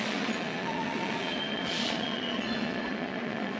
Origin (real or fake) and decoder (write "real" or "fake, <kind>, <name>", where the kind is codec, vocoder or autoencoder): fake, vocoder, Vocos